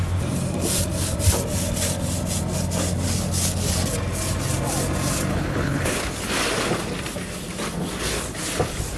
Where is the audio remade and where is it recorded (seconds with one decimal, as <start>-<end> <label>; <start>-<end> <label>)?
0.0-5.3 recorded; 5.3-6.0 remade; 6.0-9.0 recorded